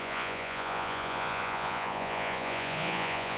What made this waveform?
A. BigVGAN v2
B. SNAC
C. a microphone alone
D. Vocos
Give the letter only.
D